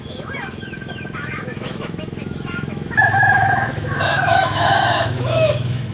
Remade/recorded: remade